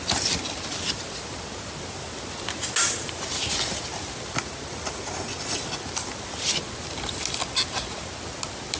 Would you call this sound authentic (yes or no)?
yes